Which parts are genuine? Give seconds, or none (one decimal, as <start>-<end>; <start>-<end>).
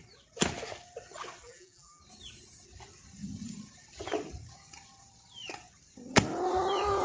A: 0.0-1.4; 2.0-7.0